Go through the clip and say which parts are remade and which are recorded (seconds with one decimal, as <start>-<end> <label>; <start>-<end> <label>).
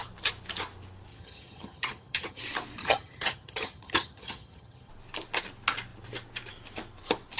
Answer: 0.0-1.1 recorded; 1.1-2.4 remade; 2.4-2.8 recorded; 2.8-4.9 remade; 4.9-7.4 recorded